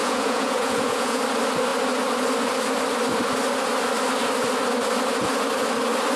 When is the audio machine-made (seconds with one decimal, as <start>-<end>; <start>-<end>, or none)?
0.0-1.2